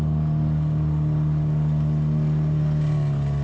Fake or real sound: real